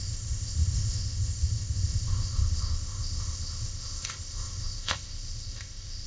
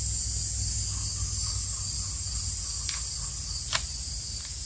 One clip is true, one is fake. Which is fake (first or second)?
first